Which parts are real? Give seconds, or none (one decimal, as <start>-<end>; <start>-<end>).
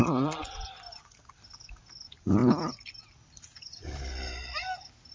0.6-5.1